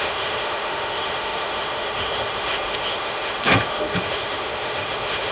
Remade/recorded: remade